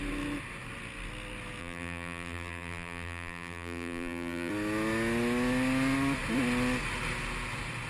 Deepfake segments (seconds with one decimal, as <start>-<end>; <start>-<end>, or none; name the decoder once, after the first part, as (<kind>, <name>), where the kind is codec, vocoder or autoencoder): 1.6-4.5 (vocoder, BigVGAN v2)